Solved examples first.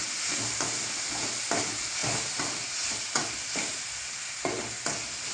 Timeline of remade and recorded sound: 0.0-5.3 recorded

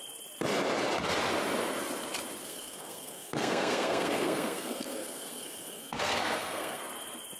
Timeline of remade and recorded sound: 0.0-2.4 recorded; 2.4-6.8 remade; 6.8-7.4 recorded

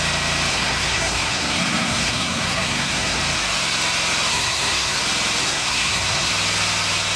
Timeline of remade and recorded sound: 0.0-0.5 recorded; 0.5-3.2 remade; 3.2-4.3 recorded; 4.3-5.0 remade; 5.0-5.4 recorded; 5.4-6.3 remade; 6.3-7.2 recorded

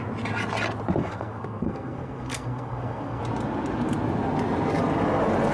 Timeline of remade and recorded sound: 0.0-1.0 recorded; 1.0-3.2 remade; 3.2-5.5 recorded

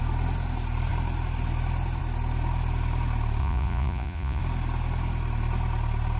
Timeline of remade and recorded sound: 0.0-3.4 recorded; 3.4-4.4 remade; 4.4-6.2 recorded